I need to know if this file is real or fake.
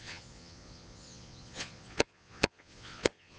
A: fake